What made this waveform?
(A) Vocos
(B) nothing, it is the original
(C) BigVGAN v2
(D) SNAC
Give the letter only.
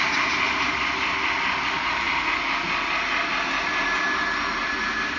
B